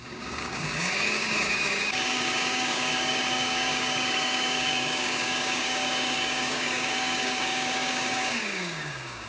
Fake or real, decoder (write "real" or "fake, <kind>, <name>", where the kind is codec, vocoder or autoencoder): fake, codec, DAC